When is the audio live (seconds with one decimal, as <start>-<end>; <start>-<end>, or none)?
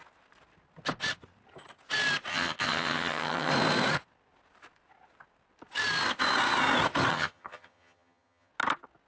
0.0-2.3; 3.5-7.1; 8.5-9.1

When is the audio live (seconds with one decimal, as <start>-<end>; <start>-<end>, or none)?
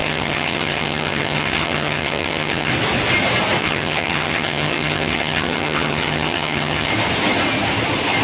2.7-3.6; 6.9-8.2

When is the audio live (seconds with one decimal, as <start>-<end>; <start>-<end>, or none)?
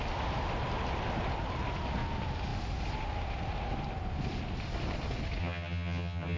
0.0-5.4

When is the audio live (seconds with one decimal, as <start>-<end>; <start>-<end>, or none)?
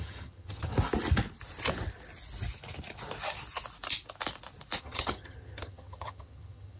0.7-4.8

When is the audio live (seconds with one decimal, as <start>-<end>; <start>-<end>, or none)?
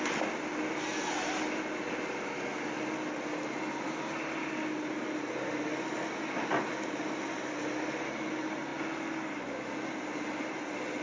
0.0-11.0